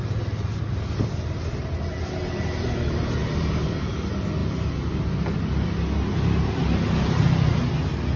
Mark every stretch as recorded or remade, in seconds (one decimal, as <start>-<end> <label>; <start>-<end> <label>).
0.0-3.2 recorded; 3.2-3.9 remade; 3.9-8.2 recorded